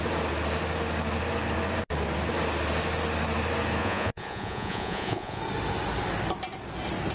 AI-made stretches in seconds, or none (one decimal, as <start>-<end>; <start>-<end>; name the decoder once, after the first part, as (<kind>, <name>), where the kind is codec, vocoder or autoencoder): 3.8-5.4 (vocoder, Vocos)